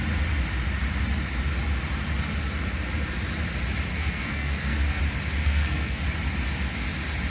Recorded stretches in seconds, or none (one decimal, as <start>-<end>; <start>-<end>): 0.0-3.9; 5.0-5.4; 6.0-7.3